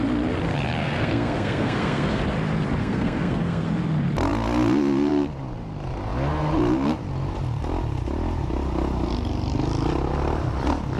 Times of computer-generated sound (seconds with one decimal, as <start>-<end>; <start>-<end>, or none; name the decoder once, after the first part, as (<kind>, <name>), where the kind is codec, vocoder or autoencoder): 0.8-2.2 (codec, SNAC); 2.8-3.7